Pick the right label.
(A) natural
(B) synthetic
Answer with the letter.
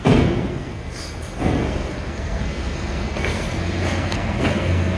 B